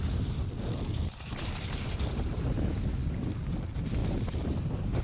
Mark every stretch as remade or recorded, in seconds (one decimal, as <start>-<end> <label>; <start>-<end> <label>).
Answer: 0.0-5.0 recorded